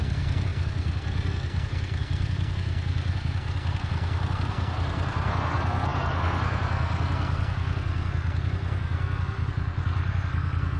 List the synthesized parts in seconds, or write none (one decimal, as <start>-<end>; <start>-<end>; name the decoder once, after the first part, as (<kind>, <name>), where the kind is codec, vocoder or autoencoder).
0.0-10.8 (codec, SNAC)